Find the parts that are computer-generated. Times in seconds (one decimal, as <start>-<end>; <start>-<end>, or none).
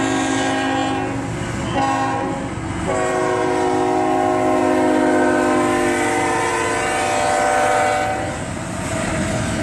none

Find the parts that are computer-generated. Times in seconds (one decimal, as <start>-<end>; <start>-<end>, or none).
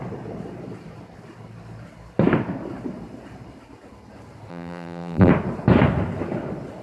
4.5-5.3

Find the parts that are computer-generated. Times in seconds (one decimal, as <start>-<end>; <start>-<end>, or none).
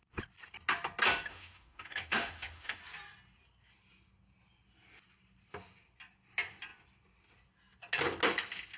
1.3-2.8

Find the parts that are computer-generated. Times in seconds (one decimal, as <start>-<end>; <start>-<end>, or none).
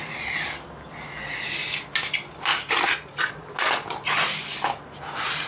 2.5-3.3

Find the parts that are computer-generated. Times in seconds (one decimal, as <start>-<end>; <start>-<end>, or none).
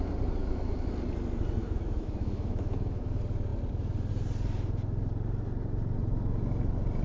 0.4-0.9; 1.6-3.1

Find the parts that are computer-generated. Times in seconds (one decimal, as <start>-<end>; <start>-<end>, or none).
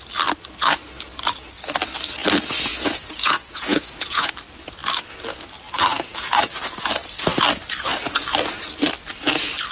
2.7-4.3; 5.9-6.4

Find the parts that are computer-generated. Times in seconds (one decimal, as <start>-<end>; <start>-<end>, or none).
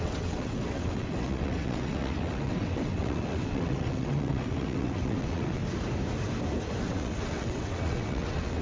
0.0-5.6; 6.8-8.6